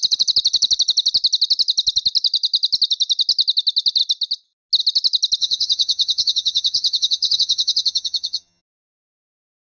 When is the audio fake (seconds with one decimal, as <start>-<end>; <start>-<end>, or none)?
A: 5.4-8.6